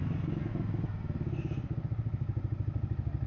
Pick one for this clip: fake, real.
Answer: real